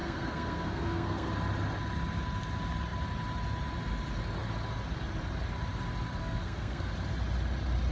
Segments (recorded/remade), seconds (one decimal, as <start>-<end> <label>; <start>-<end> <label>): 0.0-1.3 remade; 1.3-6.2 recorded; 6.2-6.9 remade; 6.9-7.9 recorded